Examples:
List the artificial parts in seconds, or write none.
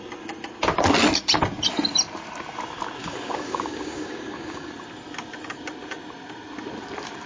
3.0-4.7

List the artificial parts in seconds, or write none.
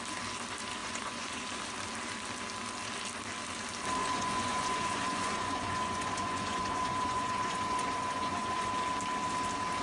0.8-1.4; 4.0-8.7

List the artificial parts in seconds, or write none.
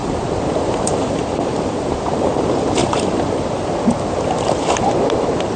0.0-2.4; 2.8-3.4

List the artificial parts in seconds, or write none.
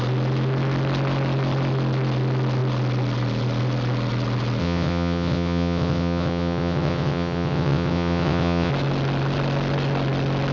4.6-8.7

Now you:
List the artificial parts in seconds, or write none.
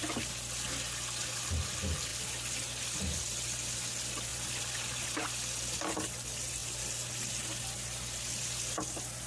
4.3-5.2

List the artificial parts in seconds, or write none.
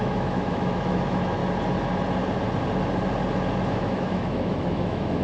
0.0-1.4; 3.7-5.2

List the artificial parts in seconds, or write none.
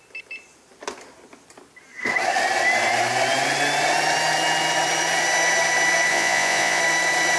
6.1-6.8